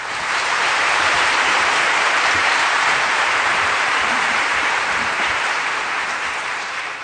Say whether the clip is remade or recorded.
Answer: remade